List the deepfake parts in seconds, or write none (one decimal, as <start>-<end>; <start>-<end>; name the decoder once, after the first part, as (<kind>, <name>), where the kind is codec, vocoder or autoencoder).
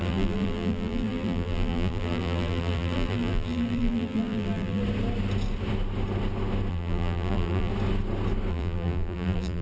0.0-4.8 (vocoder, BigVGAN v2); 6.7-7.7; 8.5-9.6